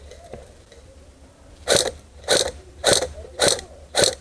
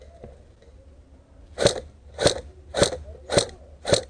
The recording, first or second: second